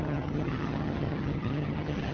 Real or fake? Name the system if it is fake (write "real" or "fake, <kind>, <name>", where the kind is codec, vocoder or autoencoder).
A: fake, vocoder, HiFi-GAN